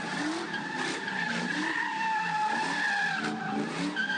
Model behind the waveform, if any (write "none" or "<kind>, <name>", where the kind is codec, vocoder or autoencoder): none